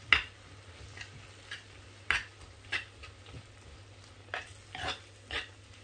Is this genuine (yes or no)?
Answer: yes